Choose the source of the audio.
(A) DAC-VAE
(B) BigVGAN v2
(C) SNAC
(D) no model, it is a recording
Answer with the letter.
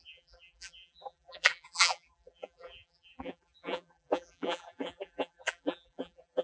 B